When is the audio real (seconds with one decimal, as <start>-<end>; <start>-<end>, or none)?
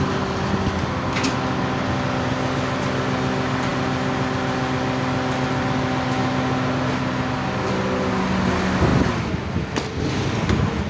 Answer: 0.0-10.9